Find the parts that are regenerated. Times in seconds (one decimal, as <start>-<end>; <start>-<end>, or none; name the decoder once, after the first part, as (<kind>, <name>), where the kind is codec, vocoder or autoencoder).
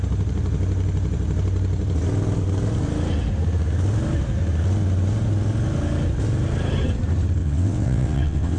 7.4-8.6 (vocoder, WaveNeXt)